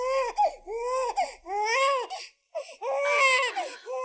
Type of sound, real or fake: real